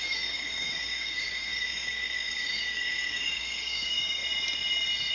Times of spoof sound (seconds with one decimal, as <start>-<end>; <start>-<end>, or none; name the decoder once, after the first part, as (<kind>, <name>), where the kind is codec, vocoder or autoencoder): 0.0-4.2 (codec, DAC)